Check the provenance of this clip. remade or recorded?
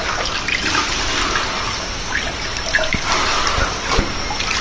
recorded